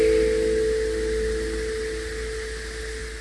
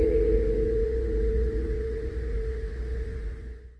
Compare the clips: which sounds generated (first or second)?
second